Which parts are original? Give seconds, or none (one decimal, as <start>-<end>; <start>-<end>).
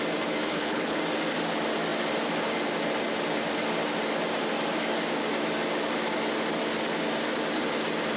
0.0-0.5; 1.0-8.2